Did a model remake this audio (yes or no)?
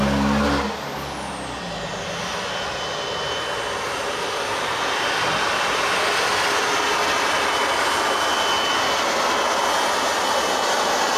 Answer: no